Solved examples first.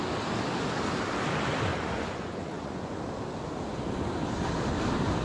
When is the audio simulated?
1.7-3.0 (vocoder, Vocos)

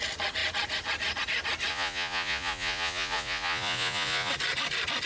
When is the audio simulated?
1.7-4.3 (vocoder, Vocos)